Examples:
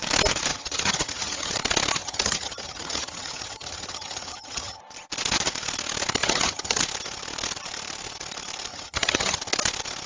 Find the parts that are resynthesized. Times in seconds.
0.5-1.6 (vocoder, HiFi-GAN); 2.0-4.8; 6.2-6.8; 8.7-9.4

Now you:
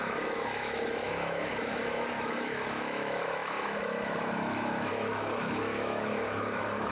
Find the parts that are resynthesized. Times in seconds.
0.0-6.9 (autoencoder, DAC-VAE)

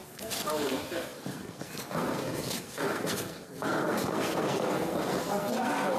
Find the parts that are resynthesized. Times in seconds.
0.0-6.0 (codec, SNAC)

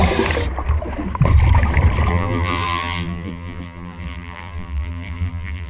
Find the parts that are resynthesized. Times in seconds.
2.1-5.7 (vocoder, BigVGAN v2)

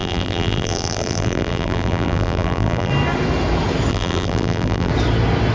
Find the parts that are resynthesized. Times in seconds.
0.0-2.9 (vocoder, BigVGAN v2); 3.9-4.9

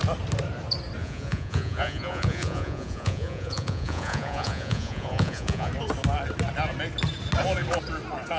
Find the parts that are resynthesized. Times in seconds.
1.0-5.7 (vocoder, Vocos)

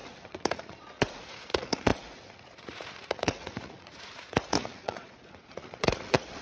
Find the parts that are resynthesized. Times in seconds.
0.0-6.4 (vocoder, Vocos)

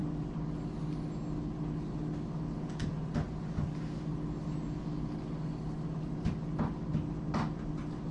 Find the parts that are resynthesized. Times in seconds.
none